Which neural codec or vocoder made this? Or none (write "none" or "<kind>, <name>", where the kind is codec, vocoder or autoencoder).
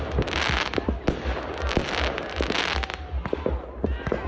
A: none